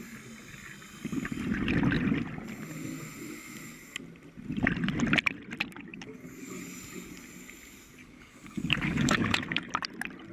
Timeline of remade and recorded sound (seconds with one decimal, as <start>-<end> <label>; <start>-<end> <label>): 0.0-5.9 recorded; 5.9-6.6 remade; 6.6-8.0 recorded; 8.0-9.7 remade; 9.7-10.3 recorded